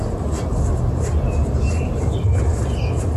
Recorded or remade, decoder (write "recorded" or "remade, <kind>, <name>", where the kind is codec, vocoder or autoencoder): recorded